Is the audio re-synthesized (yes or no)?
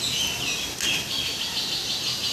no